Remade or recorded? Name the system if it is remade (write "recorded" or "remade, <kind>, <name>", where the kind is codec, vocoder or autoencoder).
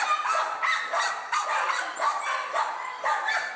recorded